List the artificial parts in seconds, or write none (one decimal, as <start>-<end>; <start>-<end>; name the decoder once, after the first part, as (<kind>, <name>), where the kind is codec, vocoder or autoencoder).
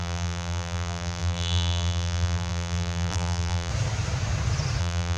0.0-3.7 (vocoder, BigVGAN v2); 4.8-5.2